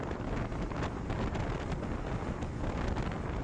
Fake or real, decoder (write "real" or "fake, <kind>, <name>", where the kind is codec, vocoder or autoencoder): real